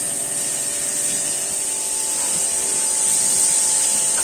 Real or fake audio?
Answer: real